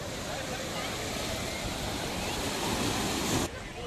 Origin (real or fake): real